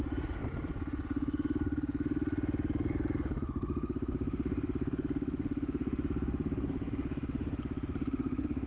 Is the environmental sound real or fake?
real